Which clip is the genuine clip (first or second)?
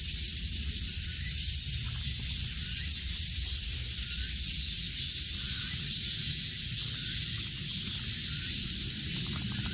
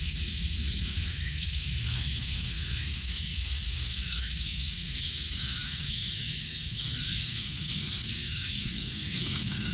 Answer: first